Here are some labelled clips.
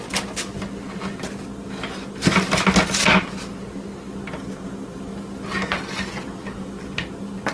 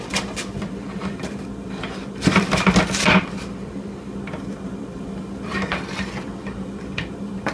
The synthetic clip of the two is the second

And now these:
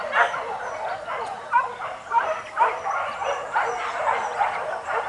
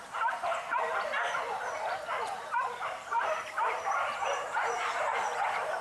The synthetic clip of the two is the second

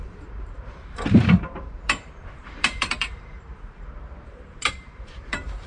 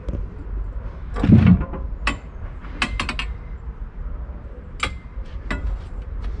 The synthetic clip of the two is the first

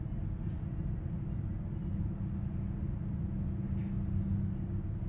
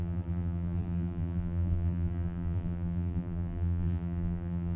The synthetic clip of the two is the second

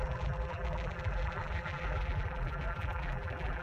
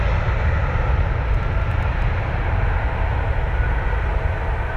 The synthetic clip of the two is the first